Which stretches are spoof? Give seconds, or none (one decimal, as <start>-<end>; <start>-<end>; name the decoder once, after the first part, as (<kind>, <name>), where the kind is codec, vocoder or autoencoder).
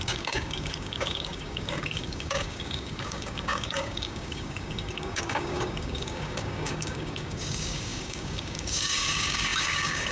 0.0-10.1 (codec, DAC)